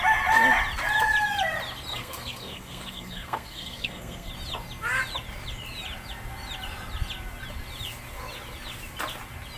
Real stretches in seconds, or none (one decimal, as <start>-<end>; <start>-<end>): 0.0-1.9; 4.3-9.6